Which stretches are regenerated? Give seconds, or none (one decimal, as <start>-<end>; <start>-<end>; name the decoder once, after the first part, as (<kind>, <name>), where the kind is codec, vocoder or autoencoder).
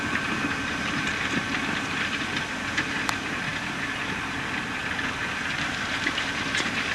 0.0-6.9 (vocoder, BigVGAN v2)